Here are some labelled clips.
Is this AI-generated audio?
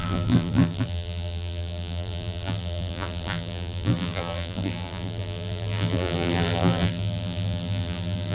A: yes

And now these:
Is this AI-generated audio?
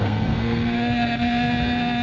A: yes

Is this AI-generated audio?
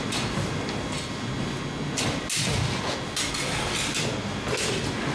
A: no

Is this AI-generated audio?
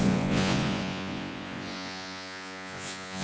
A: yes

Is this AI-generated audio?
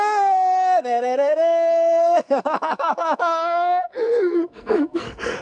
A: yes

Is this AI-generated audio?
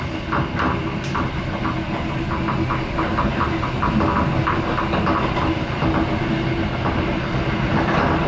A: no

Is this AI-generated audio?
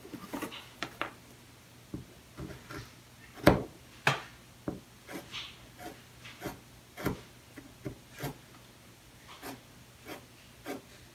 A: no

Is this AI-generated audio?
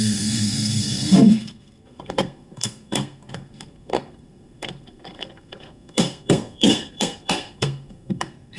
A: yes